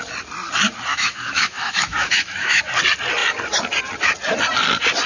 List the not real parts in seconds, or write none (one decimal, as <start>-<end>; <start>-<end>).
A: 0.9-2.6